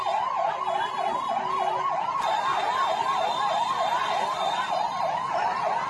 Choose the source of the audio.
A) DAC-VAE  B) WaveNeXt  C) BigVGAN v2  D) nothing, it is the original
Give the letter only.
C